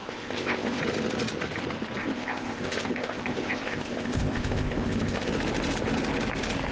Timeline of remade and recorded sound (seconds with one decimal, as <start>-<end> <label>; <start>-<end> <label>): 0.0-0.8 remade; 0.8-2.0 recorded; 2.0-5.3 remade; 5.3-6.7 recorded